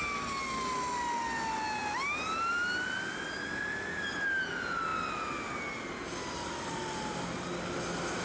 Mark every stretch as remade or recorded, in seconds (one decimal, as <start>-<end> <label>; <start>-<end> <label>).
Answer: 0.0-8.2 recorded